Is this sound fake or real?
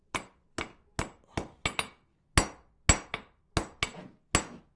real